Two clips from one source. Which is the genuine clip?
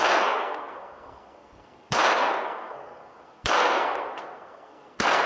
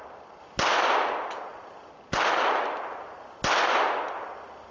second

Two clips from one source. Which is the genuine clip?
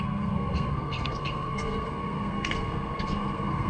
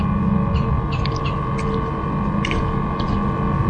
second